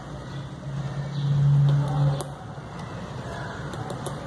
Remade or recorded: recorded